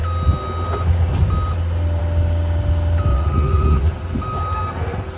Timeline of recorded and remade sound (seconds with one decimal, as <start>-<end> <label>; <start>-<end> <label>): 0.0-3.1 recorded; 3.1-3.9 remade; 3.9-5.2 recorded